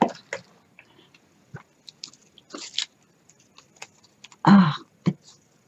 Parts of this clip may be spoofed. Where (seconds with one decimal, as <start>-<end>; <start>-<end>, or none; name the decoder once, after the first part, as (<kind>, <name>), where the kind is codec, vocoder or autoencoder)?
none